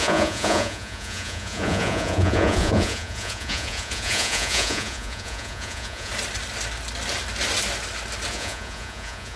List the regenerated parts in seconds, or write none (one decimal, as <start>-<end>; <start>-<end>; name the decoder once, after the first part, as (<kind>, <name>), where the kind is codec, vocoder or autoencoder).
0.0-6.1 (vocoder, Vocos); 8.3-9.4